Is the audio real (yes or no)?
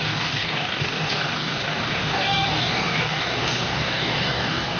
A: no